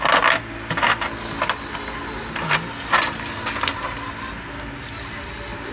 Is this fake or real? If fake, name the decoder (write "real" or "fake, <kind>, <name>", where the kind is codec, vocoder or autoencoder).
real